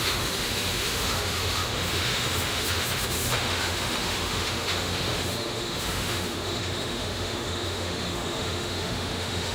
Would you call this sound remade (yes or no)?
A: yes